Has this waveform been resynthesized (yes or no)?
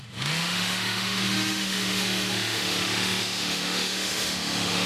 yes